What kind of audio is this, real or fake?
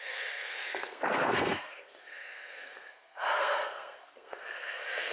fake